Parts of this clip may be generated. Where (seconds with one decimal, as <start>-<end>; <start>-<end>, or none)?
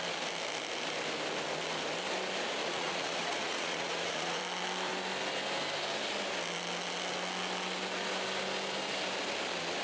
2.6-4.4